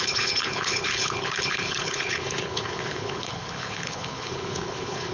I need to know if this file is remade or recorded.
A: remade